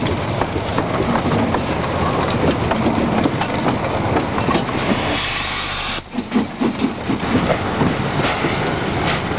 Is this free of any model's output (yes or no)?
yes